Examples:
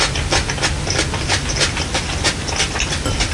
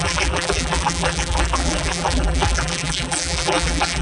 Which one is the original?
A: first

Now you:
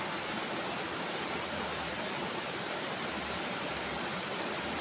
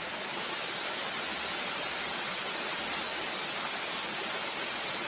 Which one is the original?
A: second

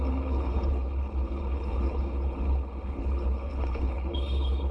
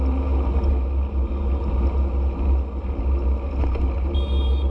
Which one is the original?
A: second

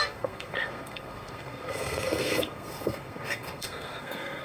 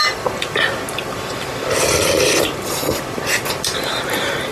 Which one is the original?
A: second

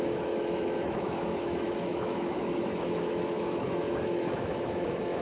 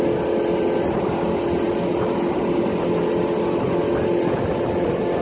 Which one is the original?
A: second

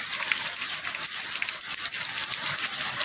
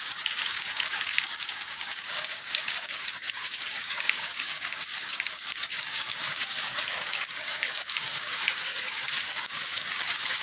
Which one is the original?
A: first